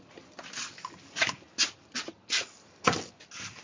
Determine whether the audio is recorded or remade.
recorded